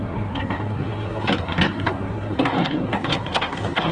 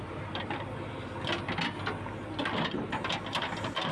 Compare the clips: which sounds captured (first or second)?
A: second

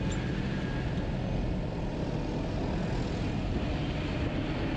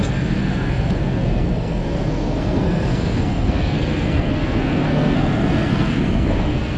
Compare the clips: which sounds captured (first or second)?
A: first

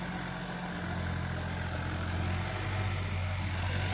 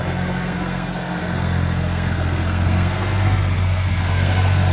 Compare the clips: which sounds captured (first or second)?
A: first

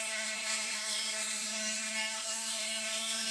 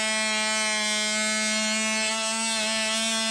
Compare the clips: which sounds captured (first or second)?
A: second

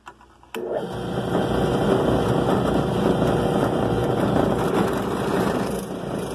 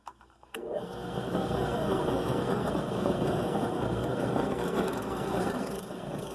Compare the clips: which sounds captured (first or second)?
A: first